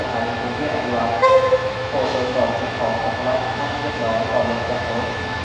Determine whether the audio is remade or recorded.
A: remade